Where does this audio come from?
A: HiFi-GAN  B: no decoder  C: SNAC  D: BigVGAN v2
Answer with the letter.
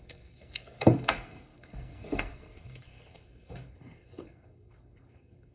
C